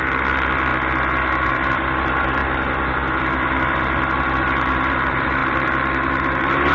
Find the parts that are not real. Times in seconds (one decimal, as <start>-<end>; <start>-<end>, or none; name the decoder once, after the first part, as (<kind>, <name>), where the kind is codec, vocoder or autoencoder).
0.0-0.7 (vocoder, BigVGAN v2); 1.5-2.4; 3.2-6.7